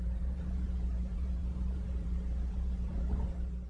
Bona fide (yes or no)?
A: no